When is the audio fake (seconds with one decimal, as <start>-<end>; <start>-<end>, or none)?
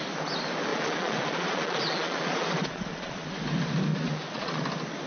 0.7-3.4; 3.9-4.6